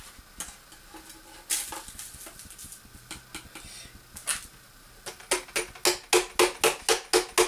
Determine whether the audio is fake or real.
real